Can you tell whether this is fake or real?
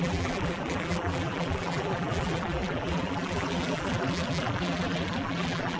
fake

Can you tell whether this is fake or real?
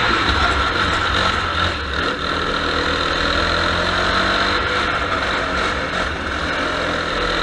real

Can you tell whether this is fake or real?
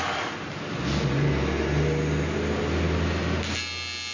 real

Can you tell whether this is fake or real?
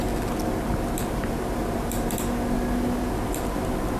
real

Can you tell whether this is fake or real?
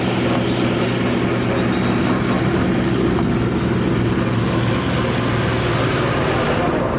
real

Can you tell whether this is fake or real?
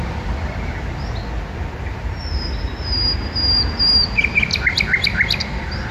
real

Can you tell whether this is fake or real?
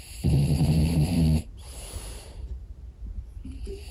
fake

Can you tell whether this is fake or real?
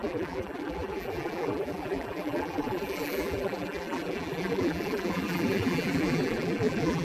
fake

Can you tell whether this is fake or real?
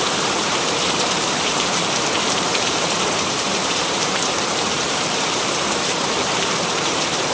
fake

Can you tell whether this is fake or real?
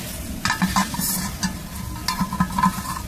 real